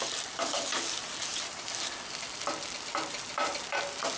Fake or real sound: real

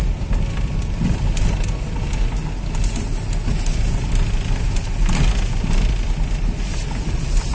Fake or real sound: real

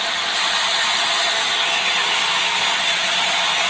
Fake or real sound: real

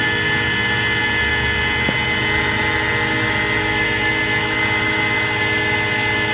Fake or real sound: real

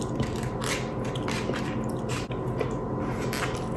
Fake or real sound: real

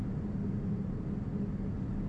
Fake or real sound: real